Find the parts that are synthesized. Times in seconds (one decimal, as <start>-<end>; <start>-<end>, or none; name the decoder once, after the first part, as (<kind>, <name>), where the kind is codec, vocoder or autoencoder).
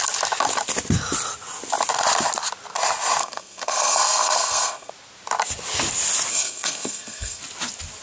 3.2-4.9 (codec, SNAC); 6.3-7.4